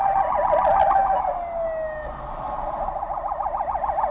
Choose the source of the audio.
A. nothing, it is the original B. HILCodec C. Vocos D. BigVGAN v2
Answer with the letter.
A